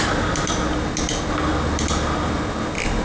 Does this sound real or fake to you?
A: real